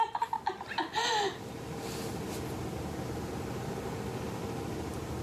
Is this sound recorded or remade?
recorded